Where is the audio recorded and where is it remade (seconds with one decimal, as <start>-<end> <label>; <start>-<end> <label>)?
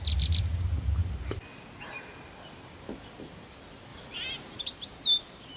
0.0-5.6 recorded